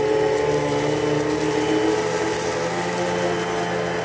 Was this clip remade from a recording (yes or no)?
no